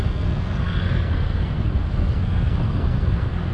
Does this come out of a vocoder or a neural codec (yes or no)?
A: yes